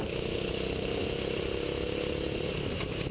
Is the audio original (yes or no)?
yes